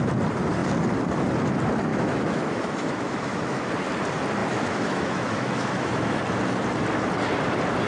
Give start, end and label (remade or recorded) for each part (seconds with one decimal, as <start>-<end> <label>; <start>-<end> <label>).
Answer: 0.0-1.9 recorded; 1.9-3.7 remade; 3.7-4.4 recorded; 4.4-6.2 remade; 6.2-7.9 recorded